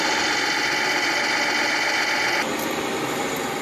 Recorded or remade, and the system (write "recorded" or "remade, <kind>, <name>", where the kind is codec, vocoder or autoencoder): recorded